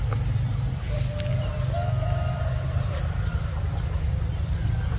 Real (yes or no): yes